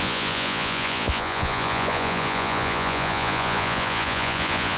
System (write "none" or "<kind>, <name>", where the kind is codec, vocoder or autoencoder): vocoder, Vocos